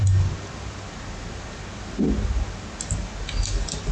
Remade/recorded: recorded